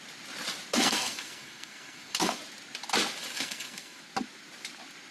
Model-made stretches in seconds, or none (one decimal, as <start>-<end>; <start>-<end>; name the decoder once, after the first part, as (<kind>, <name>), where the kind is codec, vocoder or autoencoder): 0.7-2.4 (codec, SNAC); 3.3-4.0